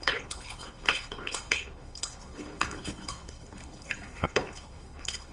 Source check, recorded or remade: remade